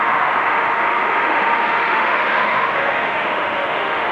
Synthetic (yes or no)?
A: yes